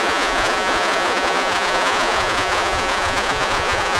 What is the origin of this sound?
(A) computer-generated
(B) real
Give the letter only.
A